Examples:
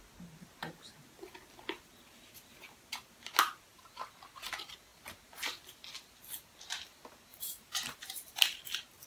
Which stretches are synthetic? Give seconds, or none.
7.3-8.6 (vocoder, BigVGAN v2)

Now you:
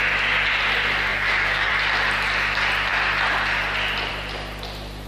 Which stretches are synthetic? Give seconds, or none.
1.1-1.7 (codec, DAC)

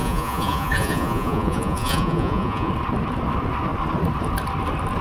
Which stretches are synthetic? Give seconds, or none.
0.0-2.7 (vocoder, Vocos)

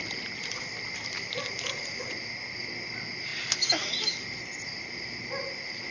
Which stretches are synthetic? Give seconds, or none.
none

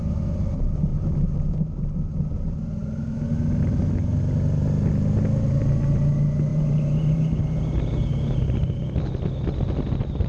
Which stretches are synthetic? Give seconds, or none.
6.5-8.8 (vocoder, BigVGAN v2)

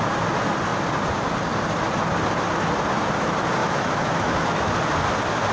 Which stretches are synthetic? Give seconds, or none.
3.6-4.7 (autoencoder, DAC-VAE)

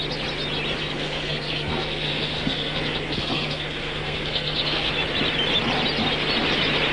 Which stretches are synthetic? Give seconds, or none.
0.8-4.9 (codec, SNAC)